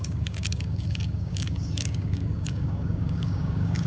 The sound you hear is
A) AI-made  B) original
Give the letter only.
A